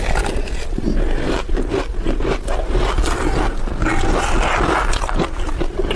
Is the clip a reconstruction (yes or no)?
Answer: no